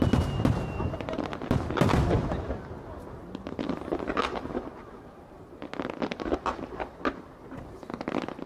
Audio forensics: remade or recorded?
recorded